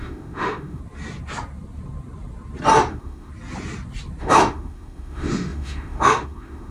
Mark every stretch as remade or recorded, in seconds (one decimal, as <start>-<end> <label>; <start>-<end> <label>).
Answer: 0.0-0.8 remade; 0.8-2.9 recorded; 2.9-3.3 remade; 3.3-4.2 recorded; 4.2-6.7 remade